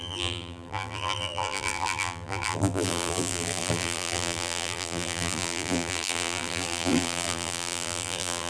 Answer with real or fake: fake